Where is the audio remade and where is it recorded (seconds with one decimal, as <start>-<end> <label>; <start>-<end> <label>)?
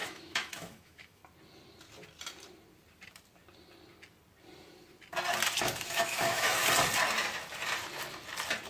0.0-1.2 remade; 1.2-5.6 recorded; 5.6-6.6 remade; 6.6-8.7 recorded